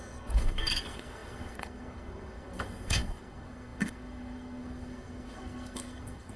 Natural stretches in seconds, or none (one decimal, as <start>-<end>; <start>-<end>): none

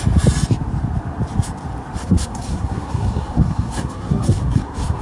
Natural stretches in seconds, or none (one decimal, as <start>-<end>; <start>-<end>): 0.0-2.0

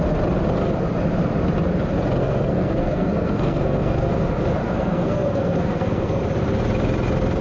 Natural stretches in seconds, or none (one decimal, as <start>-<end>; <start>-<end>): 0.0-2.2; 4.1-4.6; 6.2-7.4